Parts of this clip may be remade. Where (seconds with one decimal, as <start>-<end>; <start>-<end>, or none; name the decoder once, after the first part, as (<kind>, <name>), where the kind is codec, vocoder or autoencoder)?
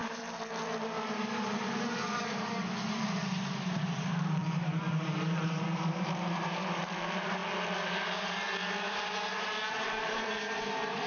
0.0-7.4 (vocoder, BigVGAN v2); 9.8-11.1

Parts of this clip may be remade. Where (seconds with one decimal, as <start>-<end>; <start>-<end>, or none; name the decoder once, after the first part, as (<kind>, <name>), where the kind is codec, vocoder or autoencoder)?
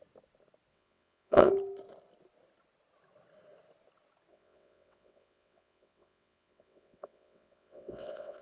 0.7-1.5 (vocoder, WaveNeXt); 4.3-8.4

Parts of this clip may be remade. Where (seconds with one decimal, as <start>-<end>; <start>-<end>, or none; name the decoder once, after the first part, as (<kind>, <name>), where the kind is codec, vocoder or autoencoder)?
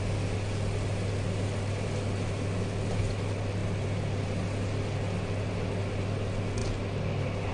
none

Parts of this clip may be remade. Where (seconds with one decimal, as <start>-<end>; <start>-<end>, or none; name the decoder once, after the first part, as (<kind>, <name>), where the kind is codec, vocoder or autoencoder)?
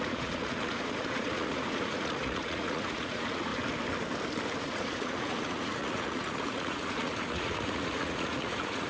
0.0-3.5 (vocoder, Vocos); 4.6-8.9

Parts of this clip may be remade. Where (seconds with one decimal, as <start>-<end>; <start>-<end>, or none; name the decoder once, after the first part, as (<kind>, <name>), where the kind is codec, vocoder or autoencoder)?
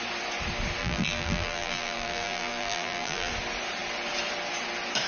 0.8-3.3 (vocoder, BigVGAN v2)